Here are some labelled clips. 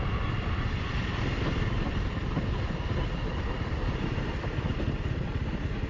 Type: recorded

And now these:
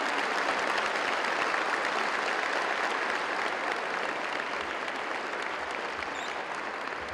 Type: recorded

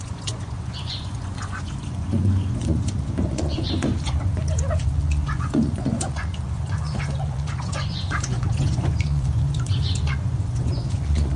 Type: remade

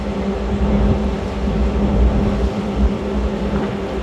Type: recorded